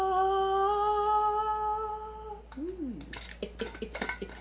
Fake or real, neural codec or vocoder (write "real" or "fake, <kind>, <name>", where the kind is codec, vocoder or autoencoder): real